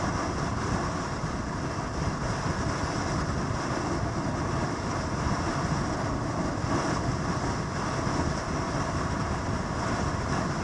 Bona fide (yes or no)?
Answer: yes